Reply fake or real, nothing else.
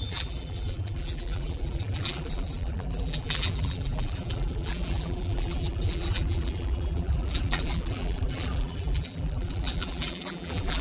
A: fake